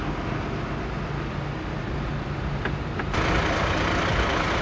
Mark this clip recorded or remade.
recorded